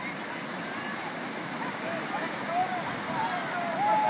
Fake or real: real